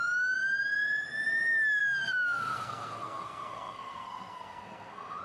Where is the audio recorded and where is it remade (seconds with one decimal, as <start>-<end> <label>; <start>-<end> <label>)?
0.0-1.8 recorded; 1.8-5.2 remade